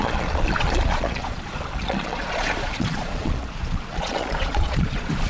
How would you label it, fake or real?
fake